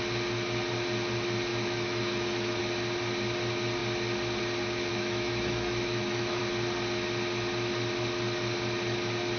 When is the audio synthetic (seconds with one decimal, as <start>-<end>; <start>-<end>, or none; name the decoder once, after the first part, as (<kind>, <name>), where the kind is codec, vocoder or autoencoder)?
1.5-2.6 (autoencoder, DAC-VAE); 4.9-6.4